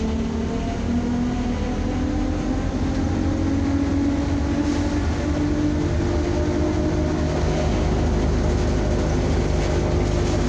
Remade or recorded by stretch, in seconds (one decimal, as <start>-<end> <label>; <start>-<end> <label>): 0.0-10.5 recorded